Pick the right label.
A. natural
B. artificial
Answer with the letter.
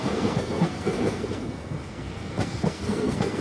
B